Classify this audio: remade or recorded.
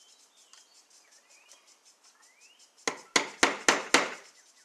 recorded